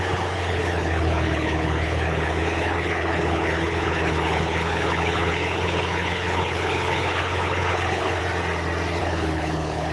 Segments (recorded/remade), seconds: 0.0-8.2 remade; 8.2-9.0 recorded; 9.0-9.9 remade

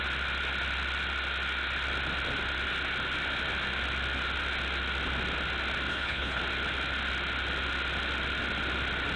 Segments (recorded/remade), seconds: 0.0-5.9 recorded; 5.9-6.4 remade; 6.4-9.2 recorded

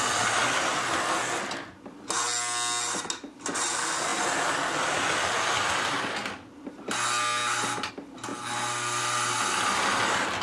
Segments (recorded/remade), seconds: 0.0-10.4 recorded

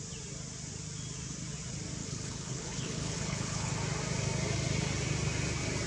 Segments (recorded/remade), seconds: 0.0-2.0 recorded; 2.0-3.7 remade; 3.7-5.9 recorded

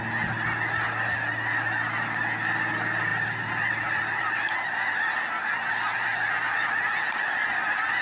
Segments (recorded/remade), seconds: 0.0-8.0 recorded

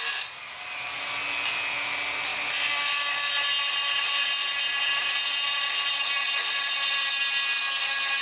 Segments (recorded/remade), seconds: 0.0-8.2 recorded

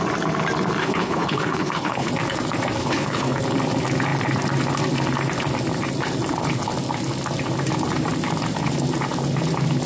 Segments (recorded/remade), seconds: 0.0-0.8 recorded; 0.8-2.1 remade; 2.1-2.8 recorded; 2.8-3.4 remade; 3.4-9.9 recorded